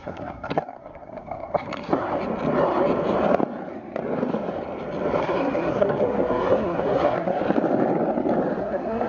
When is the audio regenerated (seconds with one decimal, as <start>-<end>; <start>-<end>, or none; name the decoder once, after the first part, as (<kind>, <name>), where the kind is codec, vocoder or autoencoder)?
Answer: 0.0-2.0 (codec, SNAC); 5.2-7.4; 8.6-9.1